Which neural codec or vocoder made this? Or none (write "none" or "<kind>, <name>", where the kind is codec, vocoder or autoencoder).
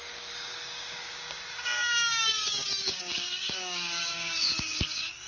codec, DAC